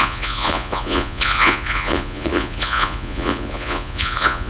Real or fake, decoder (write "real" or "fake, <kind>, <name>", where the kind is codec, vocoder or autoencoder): fake, vocoder, Vocos